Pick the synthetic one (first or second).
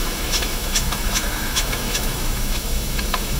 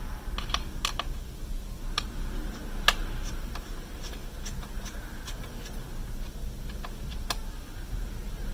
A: first